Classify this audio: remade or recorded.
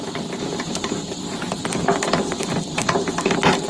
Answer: recorded